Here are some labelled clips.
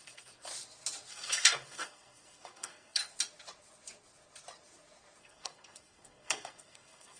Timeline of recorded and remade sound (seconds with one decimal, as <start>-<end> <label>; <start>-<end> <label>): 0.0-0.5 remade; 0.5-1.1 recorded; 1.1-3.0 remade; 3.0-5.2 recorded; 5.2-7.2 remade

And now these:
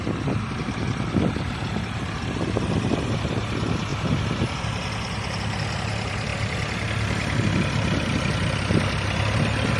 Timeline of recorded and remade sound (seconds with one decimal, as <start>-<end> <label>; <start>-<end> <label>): 0.0-9.8 recorded

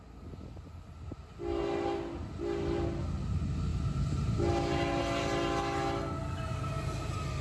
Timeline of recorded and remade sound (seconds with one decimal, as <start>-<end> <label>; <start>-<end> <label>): 0.0-7.4 recorded

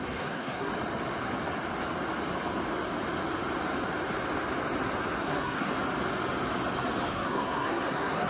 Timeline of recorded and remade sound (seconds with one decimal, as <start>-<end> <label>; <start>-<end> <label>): 0.0-0.7 remade; 0.7-5.2 recorded; 5.2-5.7 remade; 5.7-7.1 recorded; 7.1-8.3 remade

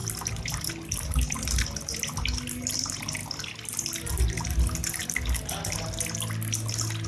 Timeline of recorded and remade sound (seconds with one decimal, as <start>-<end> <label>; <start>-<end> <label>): 0.0-7.1 recorded

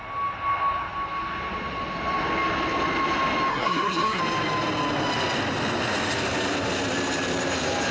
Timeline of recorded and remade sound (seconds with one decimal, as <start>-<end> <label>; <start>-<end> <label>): 0.0-3.5 recorded; 3.5-4.2 remade; 4.2-7.9 recorded